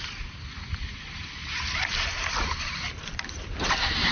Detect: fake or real real